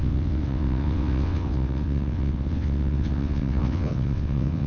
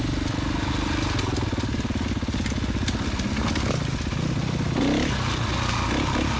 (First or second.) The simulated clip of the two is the first